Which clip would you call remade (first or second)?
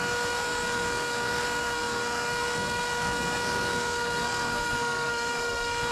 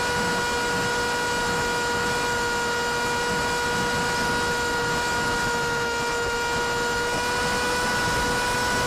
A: first